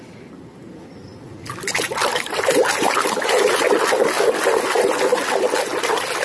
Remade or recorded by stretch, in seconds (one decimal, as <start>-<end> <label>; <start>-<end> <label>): 0.0-6.2 recorded